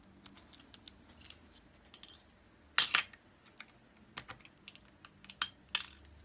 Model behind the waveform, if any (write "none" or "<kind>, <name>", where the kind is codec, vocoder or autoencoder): none